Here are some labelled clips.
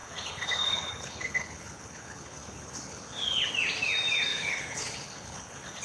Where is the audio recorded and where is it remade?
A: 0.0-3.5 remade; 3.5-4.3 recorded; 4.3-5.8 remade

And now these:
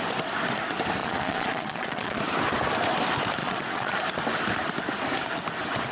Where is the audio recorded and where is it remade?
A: 0.0-1.0 recorded; 1.0-2.2 remade; 2.2-3.4 recorded; 3.4-4.0 remade; 4.0-5.9 recorded

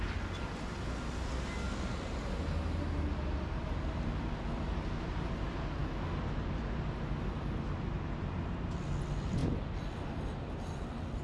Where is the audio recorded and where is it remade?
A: 0.0-11.2 recorded

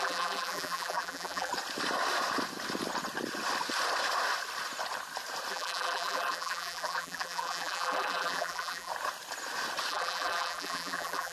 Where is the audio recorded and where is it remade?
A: 0.0-1.5 remade; 1.5-5.5 recorded; 5.5-8.9 remade; 8.9-9.9 recorded; 9.9-11.3 remade

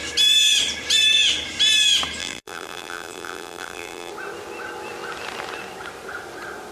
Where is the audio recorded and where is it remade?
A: 0.0-2.2 recorded; 2.2-4.1 remade; 4.1-6.7 recorded